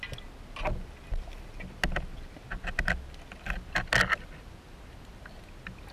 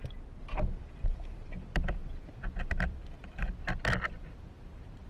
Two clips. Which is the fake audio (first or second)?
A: second